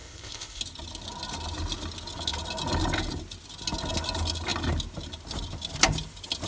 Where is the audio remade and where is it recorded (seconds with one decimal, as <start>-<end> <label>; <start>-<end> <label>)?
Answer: 0.0-0.6 remade; 0.6-6.5 recorded